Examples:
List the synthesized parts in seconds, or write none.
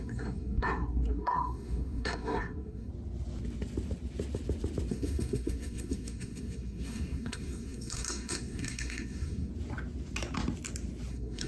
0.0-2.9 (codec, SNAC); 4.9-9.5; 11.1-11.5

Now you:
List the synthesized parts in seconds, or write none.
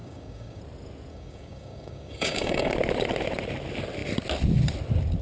0.0-0.6 (codec, DAC); 1.1-2.7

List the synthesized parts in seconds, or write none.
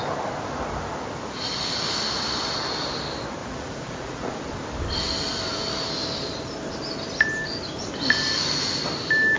3.4-4.4 (vocoder, Vocos)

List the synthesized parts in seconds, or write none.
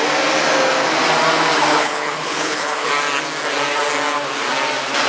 1.7-2.9 (codec, HILCodec)